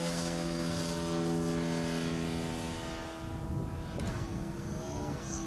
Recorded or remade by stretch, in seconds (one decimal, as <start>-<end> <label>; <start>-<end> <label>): 0.0-0.8 remade; 0.8-4.1 recorded; 4.1-5.5 remade